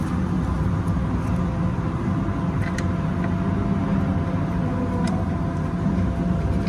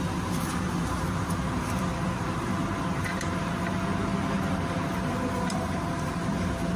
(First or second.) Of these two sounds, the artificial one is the second